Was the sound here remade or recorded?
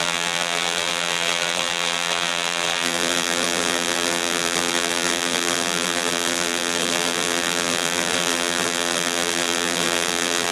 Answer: remade